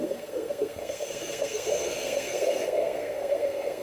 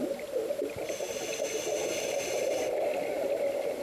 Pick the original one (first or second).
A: second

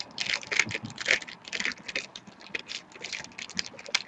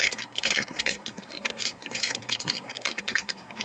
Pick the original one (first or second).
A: first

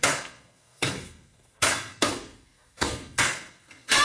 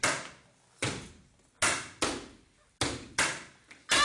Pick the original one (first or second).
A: second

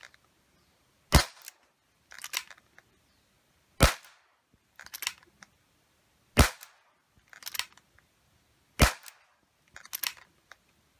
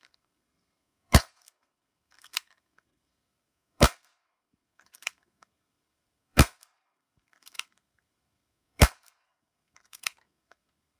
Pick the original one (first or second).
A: first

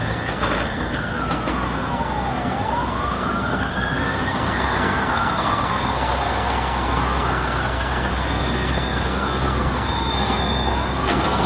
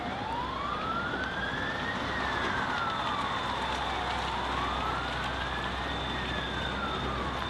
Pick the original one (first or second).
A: second